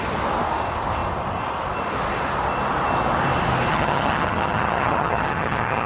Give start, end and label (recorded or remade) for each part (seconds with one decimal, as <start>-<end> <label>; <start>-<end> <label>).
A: 0.0-3.7 recorded; 3.7-5.9 remade